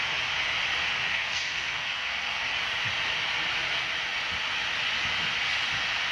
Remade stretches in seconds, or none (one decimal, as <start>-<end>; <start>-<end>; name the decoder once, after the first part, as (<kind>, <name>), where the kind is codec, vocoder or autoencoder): 1.1-2.5 (codec, SNAC)